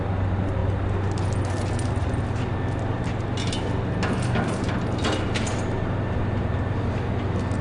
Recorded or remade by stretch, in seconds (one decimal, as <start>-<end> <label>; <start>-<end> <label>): 0.0-7.6 recorded